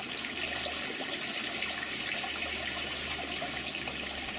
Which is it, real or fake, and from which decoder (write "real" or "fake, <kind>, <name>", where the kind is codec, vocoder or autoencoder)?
real